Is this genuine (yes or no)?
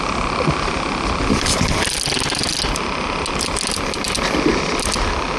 yes